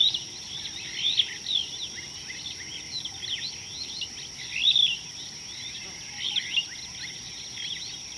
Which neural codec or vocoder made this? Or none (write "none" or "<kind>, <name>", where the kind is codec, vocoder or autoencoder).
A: none